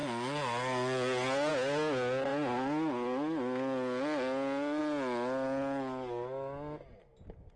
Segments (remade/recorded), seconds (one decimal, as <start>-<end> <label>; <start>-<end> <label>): 0.0-7.6 recorded